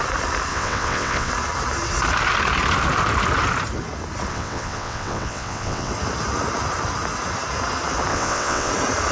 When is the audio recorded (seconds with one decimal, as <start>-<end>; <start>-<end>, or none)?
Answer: 0.0-0.5; 1.3-4.3; 5.9-8.1; 8.7-9.1